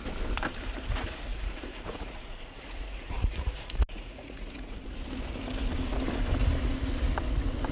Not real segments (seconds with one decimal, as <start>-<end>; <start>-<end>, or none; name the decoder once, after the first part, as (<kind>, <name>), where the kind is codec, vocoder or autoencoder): 1.3-4.9 (vocoder, Vocos)

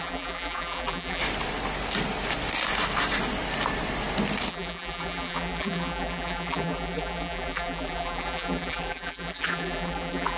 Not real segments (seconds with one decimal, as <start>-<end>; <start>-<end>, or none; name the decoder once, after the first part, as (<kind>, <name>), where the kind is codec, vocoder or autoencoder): 0.0-1.2 (vocoder, BigVGAN v2); 4.5-10.4

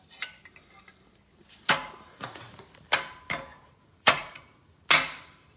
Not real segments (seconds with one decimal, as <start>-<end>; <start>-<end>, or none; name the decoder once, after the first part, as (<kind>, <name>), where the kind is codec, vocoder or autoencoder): 2.1-2.6 (vocoder, Vocos); 3.5-4.8

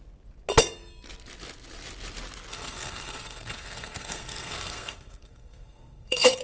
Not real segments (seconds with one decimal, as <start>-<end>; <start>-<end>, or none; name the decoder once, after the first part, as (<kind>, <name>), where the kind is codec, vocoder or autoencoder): 2.5-6.4 (codec, SNAC)

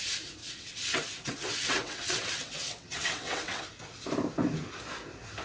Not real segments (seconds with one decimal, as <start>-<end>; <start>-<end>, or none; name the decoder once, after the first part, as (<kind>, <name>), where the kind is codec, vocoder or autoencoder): 0.4-3.6 (vocoder, WaveNeXt)

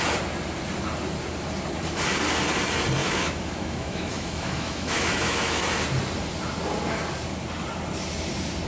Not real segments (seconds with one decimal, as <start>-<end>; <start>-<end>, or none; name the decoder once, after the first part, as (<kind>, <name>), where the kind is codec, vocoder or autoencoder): 3.0-5.8 (autoencoder, DAC-VAE)